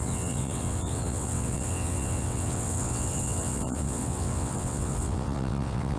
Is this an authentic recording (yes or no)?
no